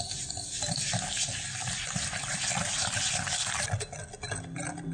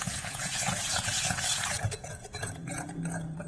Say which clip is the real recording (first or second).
first